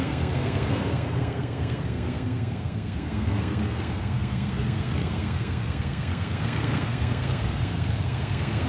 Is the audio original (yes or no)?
no